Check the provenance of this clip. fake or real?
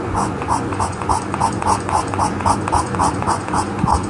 fake